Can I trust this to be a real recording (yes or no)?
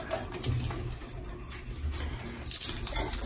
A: yes